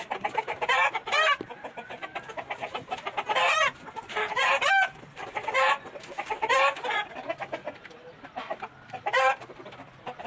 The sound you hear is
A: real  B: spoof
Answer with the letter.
A